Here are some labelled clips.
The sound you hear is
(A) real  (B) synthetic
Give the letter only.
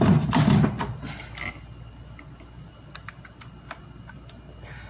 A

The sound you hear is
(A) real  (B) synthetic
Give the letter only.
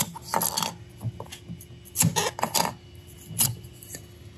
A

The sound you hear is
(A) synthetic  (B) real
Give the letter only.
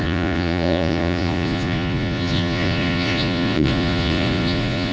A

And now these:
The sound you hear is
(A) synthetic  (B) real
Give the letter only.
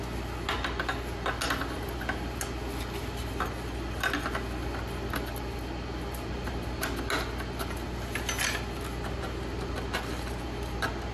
B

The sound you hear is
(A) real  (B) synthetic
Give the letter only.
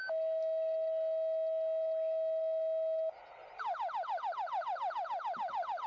A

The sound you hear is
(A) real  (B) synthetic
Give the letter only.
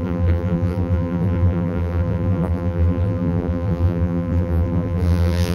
B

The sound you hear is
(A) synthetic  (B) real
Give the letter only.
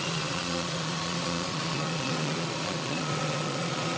A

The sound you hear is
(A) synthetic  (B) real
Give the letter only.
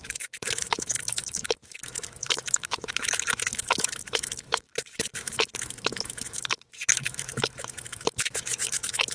A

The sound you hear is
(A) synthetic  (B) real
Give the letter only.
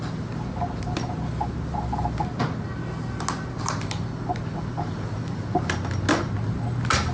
B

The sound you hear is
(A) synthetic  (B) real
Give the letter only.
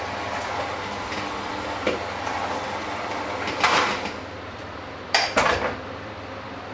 A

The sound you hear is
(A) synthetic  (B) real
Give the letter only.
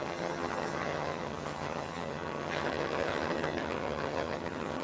A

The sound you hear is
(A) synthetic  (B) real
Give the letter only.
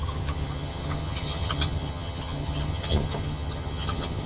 A